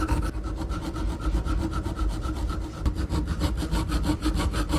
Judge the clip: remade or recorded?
recorded